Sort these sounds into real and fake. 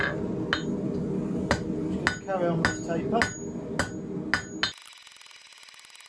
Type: real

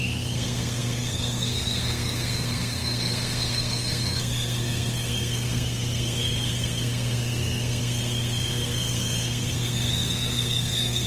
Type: fake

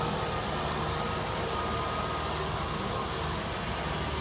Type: real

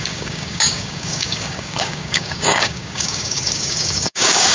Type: fake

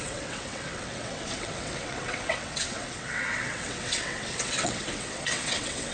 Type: fake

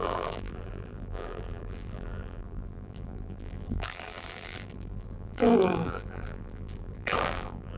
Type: fake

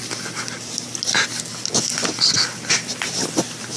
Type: real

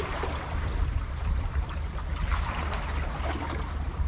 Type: real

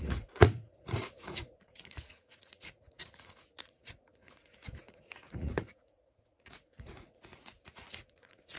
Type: fake